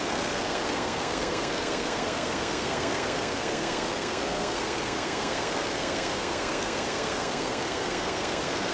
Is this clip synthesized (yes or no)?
yes